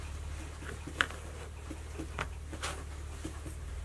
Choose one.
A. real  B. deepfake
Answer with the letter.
A